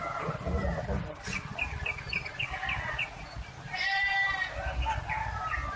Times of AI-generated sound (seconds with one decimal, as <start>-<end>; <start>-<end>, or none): 1.5-5.0